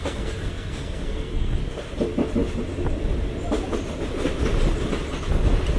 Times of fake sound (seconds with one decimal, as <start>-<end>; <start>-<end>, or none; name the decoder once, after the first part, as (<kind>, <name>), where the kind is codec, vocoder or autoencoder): 0.0-1.6 (codec, SNAC)